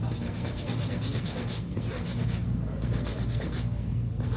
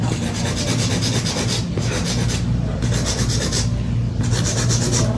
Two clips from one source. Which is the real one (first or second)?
second